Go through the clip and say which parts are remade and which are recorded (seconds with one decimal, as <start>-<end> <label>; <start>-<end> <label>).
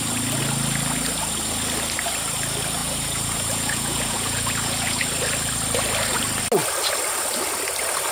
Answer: 0.0-2.8 recorded; 2.8-5.1 remade; 5.1-8.1 recorded